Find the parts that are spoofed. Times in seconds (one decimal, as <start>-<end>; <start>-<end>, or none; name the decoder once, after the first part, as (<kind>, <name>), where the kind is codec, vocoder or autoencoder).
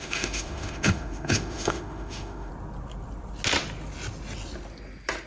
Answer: 0.0-2.5 (autoencoder, DAC-VAE)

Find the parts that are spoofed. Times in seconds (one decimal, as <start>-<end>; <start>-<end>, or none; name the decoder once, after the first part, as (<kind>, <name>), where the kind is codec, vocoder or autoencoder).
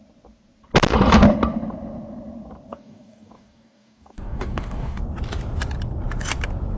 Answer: 2.7-5.0 (codec, DAC)